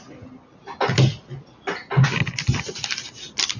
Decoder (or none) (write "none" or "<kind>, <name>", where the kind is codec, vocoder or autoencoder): none